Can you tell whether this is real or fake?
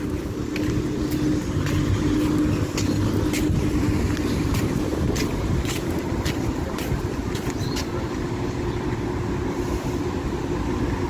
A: real